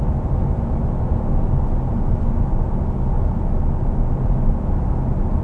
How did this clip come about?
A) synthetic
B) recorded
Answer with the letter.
B